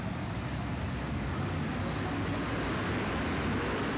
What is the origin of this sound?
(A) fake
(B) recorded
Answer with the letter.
B